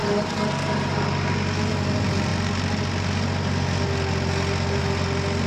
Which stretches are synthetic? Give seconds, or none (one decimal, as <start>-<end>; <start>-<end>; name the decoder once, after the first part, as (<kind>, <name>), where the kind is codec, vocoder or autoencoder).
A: none